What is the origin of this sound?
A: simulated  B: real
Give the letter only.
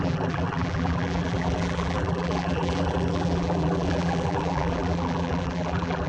A